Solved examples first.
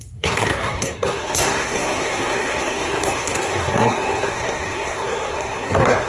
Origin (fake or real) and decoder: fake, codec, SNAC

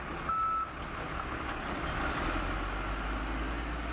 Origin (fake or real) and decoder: real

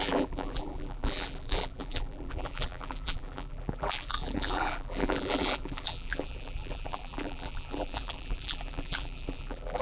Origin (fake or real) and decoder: fake, vocoder, BigVGAN v2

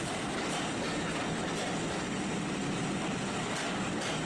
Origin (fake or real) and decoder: real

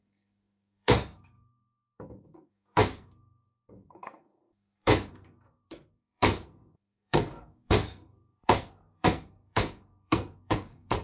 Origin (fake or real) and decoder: fake, codec, SNAC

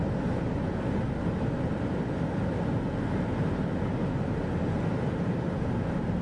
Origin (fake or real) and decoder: real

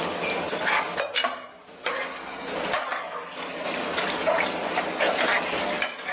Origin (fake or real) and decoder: real